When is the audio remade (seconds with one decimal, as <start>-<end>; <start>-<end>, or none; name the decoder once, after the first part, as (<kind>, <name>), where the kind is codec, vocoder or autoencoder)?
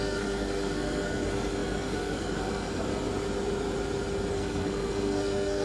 0.0-2.9 (codec, SNAC); 4.3-5.6